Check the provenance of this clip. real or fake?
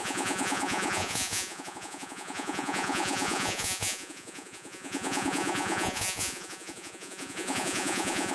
fake